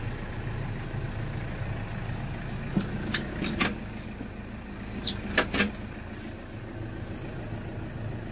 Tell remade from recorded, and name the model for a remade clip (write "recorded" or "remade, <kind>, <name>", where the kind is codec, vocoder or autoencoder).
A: recorded